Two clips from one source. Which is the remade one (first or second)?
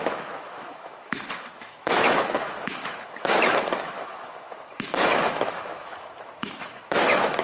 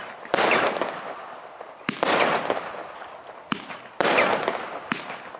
first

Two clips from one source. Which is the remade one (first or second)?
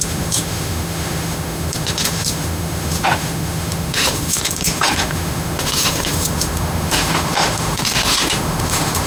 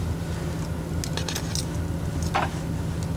first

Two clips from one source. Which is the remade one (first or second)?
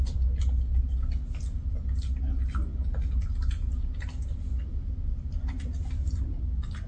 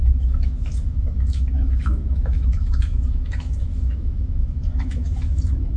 second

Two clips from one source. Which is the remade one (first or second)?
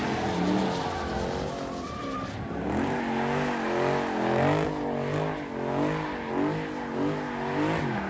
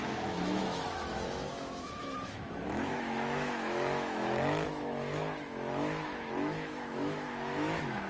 second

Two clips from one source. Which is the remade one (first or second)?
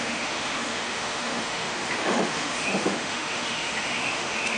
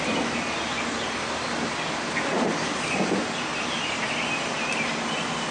first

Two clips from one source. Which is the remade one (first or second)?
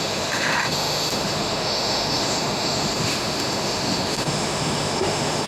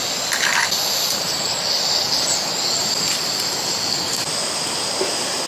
first